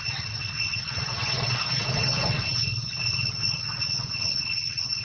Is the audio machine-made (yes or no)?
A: yes